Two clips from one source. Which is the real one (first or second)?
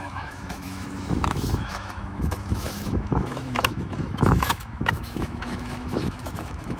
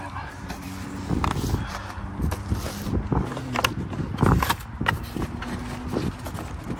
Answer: second